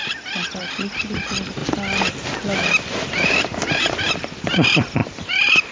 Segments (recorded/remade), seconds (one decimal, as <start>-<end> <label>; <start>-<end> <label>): 0.0-5.0 recorded; 5.0-5.7 remade